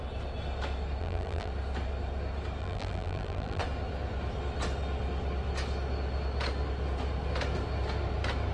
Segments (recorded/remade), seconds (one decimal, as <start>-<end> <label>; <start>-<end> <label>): 0.0-1.0 recorded; 1.0-1.5 remade; 1.5-2.6 recorded; 2.6-3.6 remade; 3.6-8.5 recorded